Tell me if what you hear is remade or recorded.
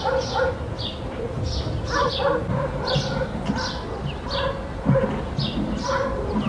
recorded